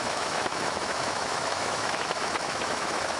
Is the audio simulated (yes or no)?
yes